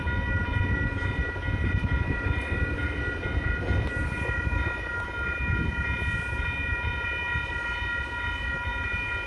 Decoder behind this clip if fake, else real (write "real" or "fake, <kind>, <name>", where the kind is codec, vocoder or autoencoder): real